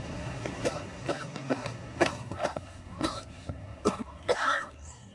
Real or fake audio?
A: fake